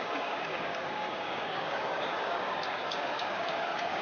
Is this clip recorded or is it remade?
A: remade